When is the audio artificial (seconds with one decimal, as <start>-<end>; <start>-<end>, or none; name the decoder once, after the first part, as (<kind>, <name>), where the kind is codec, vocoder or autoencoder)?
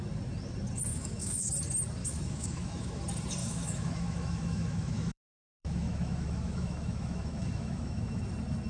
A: 0.9-1.5 (autoencoder, DAC-VAE); 2.0-3.0; 3.4-8.2